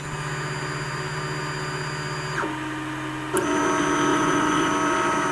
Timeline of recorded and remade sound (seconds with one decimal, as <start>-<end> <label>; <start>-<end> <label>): 0.0-4.1 recorded; 4.1-4.7 remade; 4.7-5.3 recorded